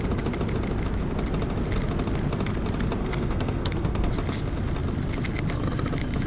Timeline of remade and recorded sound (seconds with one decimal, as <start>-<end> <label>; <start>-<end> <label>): 0.0-3.0 recorded; 3.0-4.1 remade; 4.1-6.3 recorded

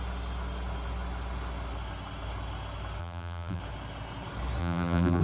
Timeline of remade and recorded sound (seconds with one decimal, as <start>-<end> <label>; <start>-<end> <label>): 0.0-3.0 recorded; 3.0-3.6 remade; 3.6-4.6 recorded; 4.6-5.2 remade

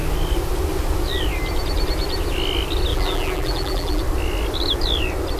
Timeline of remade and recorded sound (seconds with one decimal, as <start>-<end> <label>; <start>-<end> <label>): 0.0-2.9 recorded; 2.9-4.0 remade; 4.0-5.4 recorded